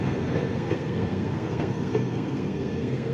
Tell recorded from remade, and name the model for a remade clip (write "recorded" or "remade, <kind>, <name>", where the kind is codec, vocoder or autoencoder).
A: remade, codec, SNAC